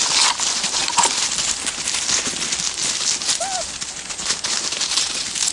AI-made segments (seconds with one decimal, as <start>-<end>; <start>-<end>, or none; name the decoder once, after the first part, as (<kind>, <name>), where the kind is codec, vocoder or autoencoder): none